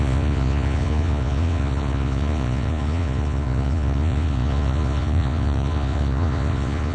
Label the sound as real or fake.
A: fake